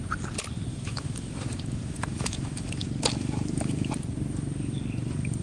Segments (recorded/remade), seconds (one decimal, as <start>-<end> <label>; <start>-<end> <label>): 0.0-0.7 recorded; 0.7-3.9 remade; 3.9-5.4 recorded